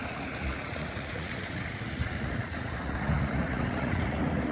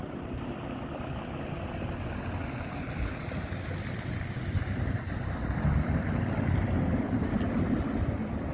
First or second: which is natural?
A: second